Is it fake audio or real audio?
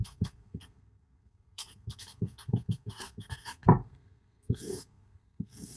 fake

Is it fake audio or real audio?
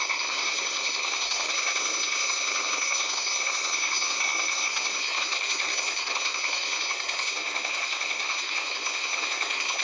fake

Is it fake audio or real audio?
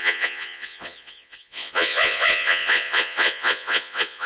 fake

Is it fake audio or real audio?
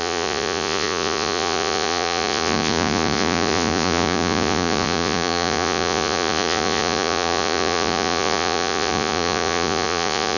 fake